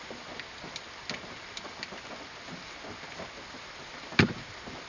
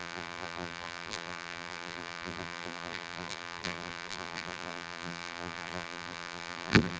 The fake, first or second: second